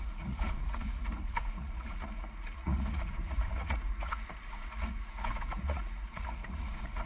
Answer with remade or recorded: remade